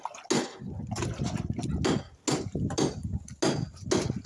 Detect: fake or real real